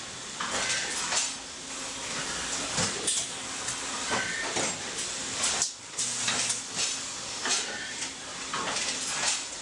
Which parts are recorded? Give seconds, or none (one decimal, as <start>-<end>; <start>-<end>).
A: 0.0-9.6